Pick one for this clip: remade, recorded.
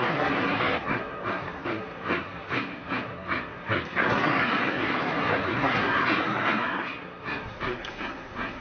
remade